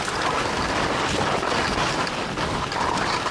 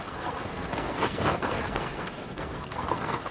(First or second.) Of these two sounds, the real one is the first